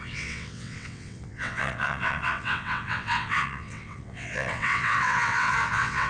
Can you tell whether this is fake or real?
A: fake